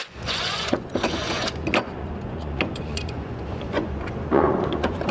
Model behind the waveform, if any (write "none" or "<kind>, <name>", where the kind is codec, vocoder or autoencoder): vocoder, Vocos